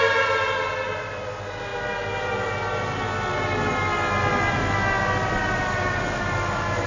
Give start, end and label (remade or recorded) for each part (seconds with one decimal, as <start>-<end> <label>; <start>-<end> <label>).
0.0-6.9 recorded

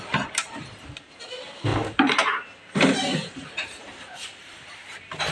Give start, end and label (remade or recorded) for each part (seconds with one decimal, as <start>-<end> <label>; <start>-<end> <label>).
0.0-0.4 recorded; 0.4-1.2 remade; 1.2-1.7 recorded; 1.7-5.3 remade

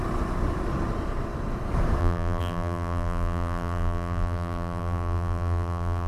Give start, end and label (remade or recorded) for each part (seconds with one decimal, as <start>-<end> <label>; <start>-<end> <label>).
0.0-2.0 recorded; 2.0-6.1 remade

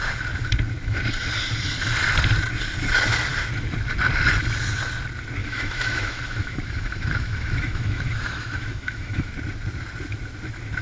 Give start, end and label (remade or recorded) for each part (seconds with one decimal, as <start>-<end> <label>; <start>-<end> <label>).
0.0-5.4 recorded; 5.4-9.3 remade; 9.3-10.8 recorded